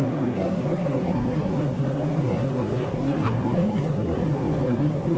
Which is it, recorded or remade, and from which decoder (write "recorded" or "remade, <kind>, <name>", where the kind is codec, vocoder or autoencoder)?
remade, codec, SNAC